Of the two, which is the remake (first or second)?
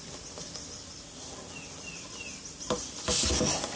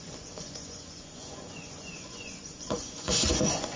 second